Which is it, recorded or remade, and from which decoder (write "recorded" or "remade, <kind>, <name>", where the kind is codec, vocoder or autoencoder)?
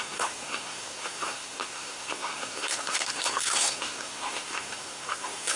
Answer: remade, codec, SNAC